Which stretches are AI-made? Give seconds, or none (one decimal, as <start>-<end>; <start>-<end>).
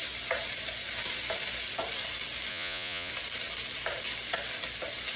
2.5-3.1